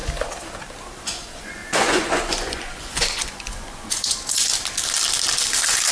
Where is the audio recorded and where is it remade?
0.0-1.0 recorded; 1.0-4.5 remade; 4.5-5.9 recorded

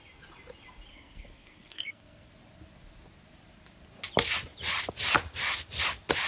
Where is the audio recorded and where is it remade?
0.0-0.9 recorded; 0.9-2.3 remade; 2.3-6.3 recorded

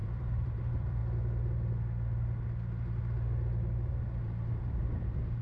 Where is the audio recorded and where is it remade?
0.0-1.0 remade; 1.0-4.2 recorded; 4.2-5.4 remade